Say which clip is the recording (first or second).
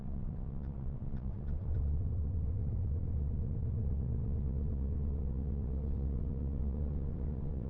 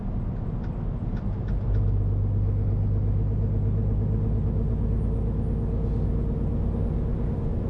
second